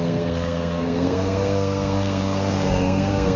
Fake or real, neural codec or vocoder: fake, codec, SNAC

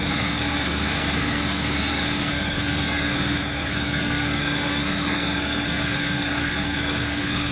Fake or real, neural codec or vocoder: fake, codec, SNAC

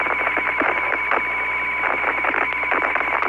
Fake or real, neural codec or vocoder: real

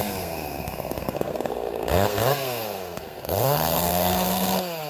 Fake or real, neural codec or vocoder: fake, codec, SNAC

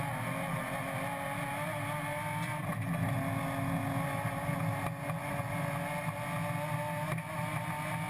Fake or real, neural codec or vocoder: real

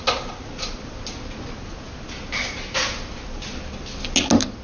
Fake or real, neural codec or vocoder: real